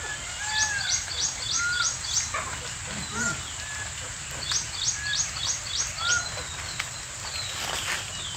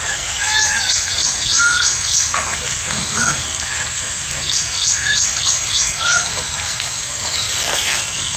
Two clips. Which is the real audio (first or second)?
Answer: first